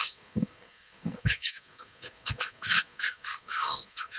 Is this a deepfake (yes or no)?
yes